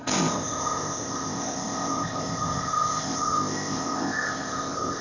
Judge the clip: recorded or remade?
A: remade